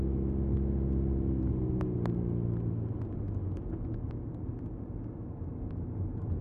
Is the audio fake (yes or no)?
no